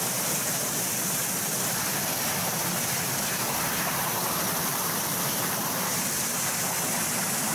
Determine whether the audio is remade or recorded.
recorded